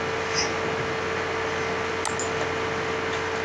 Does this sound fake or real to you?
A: real